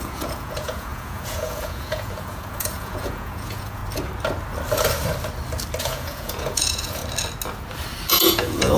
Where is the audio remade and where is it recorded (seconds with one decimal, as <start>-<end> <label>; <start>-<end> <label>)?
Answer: 0.0-3.8 remade; 3.8-5.8 recorded; 5.8-7.0 remade; 7.0-8.1 recorded; 8.1-8.8 remade